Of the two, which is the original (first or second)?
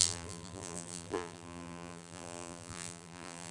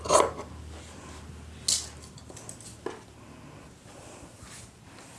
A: second